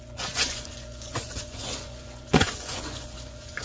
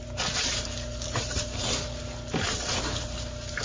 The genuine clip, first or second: second